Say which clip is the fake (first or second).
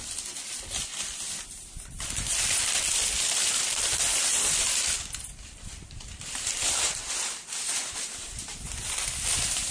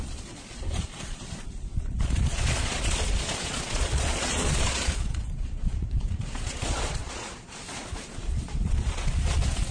second